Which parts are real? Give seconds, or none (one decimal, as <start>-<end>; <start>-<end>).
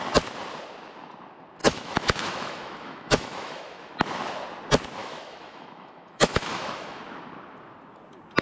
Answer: 0.0-1.6; 3.9-5.0; 7.0-8.4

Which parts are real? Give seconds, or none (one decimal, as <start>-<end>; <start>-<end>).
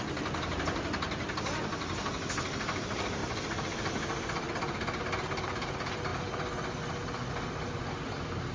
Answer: 0.0-3.2; 3.9-8.5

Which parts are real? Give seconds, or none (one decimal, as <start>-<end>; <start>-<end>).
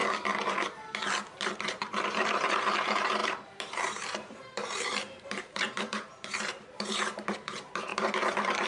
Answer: 0.0-1.2